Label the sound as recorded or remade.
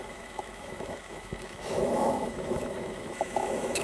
remade